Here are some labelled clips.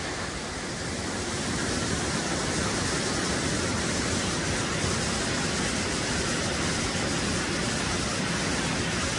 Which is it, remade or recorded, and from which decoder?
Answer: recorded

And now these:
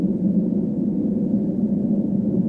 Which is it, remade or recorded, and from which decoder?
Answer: recorded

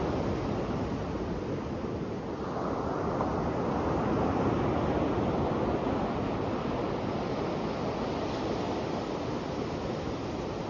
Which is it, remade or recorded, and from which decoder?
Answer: recorded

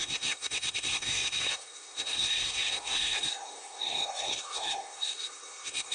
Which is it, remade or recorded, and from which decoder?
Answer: remade, codec, SNAC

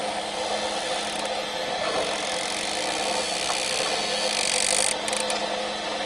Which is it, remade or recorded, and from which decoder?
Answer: recorded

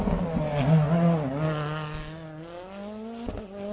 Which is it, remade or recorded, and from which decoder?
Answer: recorded